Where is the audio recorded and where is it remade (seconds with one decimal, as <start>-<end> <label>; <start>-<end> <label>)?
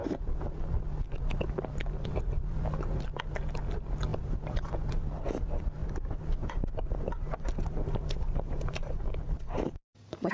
0.0-4.1 recorded; 4.1-4.8 remade; 4.8-5.8 recorded; 5.8-10.3 remade